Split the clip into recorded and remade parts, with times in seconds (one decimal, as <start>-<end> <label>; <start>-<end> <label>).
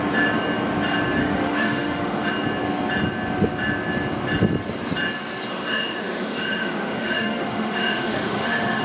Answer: 0.0-1.2 recorded; 1.2-2.3 remade; 2.3-5.5 recorded; 5.5-8.8 remade